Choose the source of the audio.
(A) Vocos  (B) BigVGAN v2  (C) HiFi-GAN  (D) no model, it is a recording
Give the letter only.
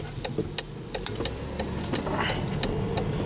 D